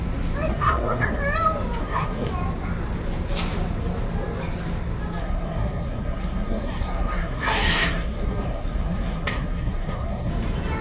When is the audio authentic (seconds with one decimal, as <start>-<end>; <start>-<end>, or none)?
0.0-0.5; 1.2-1.8; 2.3-5.2; 10.3-10.8